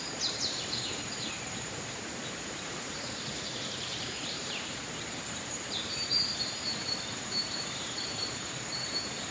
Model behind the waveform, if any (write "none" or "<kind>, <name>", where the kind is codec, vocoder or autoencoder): vocoder, BigVGAN v2